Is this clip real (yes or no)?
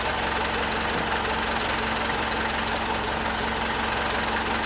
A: yes